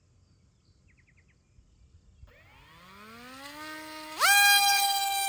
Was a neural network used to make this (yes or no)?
no